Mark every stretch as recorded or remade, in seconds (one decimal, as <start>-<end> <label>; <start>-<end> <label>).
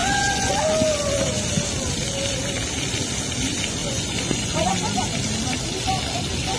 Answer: 0.0-0.5 remade; 0.5-3.8 recorded; 3.8-4.7 remade; 4.7-6.6 recorded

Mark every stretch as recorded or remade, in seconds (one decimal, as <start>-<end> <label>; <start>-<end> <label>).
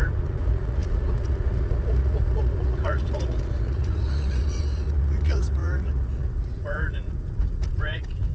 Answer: 0.0-8.3 remade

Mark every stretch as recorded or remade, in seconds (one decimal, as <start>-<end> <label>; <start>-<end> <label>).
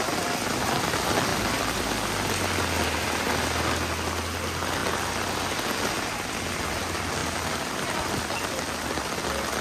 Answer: 0.0-1.3 recorded; 1.3-1.9 remade; 1.9-7.2 recorded; 7.2-9.2 remade; 9.2-9.6 recorded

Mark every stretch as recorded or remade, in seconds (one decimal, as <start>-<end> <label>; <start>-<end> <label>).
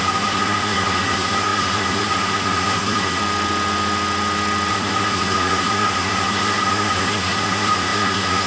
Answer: 0.0-3.2 remade; 3.2-4.7 recorded; 4.7-8.5 remade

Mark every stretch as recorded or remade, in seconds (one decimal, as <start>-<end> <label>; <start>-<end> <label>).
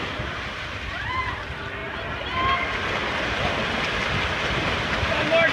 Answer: 0.0-5.5 recorded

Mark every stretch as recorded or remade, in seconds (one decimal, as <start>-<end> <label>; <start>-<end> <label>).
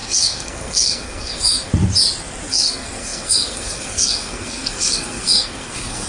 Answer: 0.0-1.7 remade; 1.7-2.5 recorded; 2.5-6.1 remade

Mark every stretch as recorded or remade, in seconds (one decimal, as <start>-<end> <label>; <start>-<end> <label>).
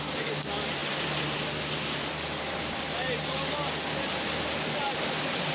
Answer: 0.0-5.5 recorded